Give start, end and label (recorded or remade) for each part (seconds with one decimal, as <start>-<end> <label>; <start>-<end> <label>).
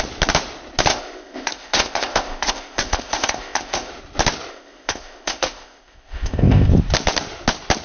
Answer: 0.0-0.9 recorded; 0.9-3.9 remade; 3.9-4.5 recorded; 4.5-6.7 remade; 6.7-7.8 recorded